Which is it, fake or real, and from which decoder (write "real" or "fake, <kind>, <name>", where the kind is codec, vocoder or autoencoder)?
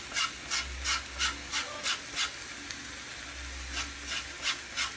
real